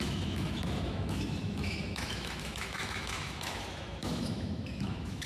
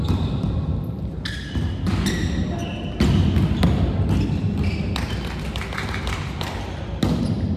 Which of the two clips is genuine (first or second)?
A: second